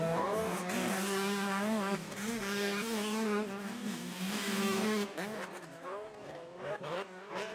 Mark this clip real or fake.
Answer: fake